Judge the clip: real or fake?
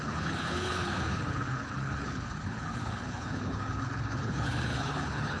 fake